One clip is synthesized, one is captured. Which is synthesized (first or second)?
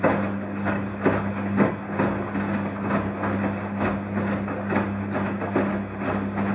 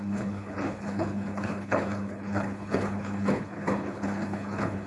second